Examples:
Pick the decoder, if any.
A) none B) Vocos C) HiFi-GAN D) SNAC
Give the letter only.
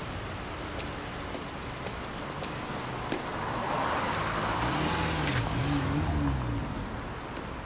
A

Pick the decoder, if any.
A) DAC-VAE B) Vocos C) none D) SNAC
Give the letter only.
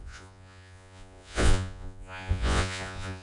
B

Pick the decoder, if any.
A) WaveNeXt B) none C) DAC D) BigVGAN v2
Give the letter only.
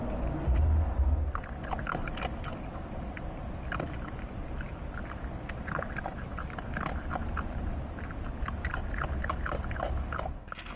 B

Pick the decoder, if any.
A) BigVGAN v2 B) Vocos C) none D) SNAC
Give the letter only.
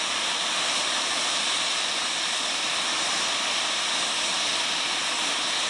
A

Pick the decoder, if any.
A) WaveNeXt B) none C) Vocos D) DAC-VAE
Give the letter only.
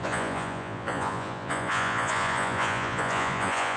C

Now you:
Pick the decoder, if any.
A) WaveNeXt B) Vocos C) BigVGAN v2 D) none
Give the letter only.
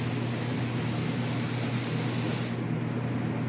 D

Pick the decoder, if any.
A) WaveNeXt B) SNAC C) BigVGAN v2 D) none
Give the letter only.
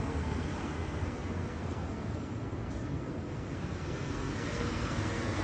B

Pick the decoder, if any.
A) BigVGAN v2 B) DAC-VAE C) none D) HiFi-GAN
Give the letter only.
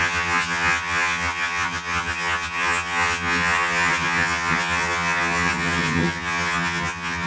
D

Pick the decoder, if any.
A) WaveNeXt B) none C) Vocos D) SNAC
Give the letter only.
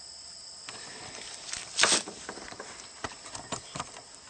B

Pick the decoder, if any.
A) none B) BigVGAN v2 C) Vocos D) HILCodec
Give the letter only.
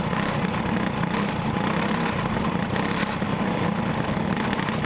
A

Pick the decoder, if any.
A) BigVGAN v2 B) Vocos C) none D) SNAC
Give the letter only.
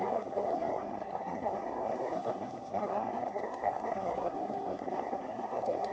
D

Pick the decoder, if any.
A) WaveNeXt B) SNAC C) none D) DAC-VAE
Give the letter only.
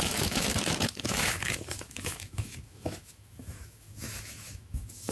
D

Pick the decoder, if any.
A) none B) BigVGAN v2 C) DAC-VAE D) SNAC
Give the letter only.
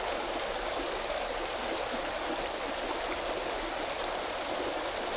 A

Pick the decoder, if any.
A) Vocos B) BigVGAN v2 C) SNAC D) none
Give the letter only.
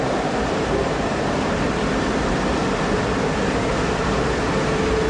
D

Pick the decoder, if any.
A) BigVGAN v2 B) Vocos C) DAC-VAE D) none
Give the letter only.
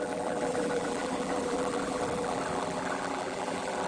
A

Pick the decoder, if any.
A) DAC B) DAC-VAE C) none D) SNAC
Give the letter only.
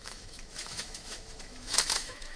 B